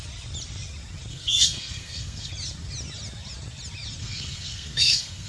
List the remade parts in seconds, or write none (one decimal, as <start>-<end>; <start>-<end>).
1.1-2.3; 4.0-5.3

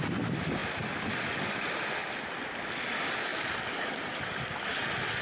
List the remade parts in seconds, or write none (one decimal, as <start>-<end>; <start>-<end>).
2.0-2.6; 3.3-4.1

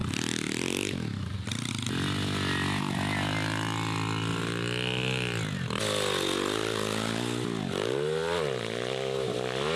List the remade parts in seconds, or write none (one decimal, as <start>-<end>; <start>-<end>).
none

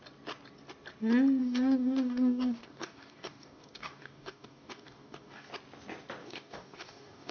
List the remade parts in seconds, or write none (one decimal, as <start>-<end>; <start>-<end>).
1.4-5.5; 6.2-7.3